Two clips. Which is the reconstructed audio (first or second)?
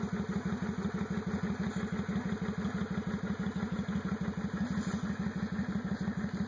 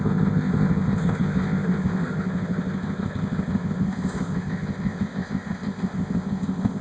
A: second